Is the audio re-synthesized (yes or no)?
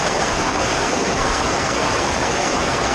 yes